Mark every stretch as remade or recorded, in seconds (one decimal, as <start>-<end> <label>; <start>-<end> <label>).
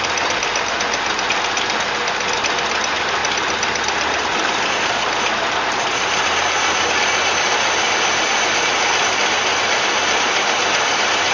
0.0-3.2 recorded; 3.2-5.1 remade; 5.1-11.3 recorded